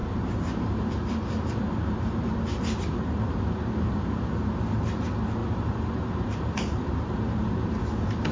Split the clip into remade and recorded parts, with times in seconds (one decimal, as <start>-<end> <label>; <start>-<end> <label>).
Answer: 0.0-4.5 remade; 4.5-5.4 recorded; 5.4-7.8 remade; 7.8-8.3 recorded